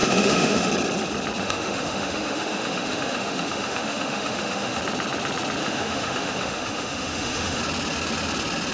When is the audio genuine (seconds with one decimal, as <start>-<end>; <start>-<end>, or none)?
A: 0.7-1.4; 4.8-5.6; 7.6-8.7